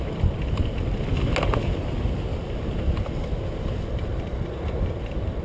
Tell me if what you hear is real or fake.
real